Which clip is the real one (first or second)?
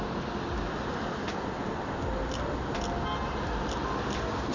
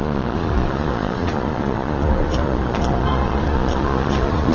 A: first